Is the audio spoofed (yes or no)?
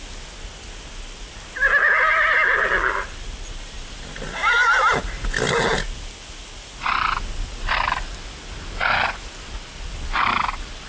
no